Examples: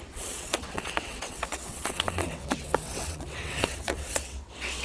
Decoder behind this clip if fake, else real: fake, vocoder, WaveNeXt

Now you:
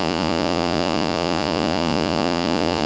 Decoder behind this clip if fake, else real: fake, vocoder, Vocos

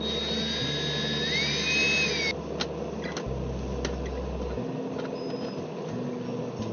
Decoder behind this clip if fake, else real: real